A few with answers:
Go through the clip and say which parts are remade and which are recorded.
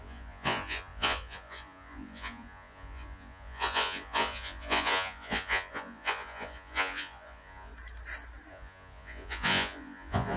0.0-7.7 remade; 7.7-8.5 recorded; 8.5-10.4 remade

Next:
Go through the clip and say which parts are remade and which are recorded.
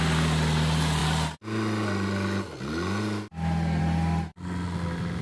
0.0-5.2 recorded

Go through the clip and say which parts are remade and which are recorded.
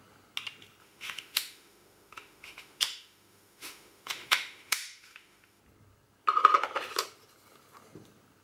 0.0-0.8 recorded; 0.8-5.6 remade; 5.6-8.4 recorded